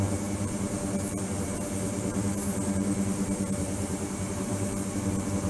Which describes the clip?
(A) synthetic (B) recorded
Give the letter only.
A